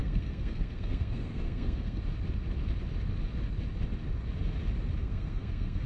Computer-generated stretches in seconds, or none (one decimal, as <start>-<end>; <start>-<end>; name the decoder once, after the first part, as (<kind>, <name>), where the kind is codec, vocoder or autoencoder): 0.0-2.0 (codec, SNAC); 5.0-5.9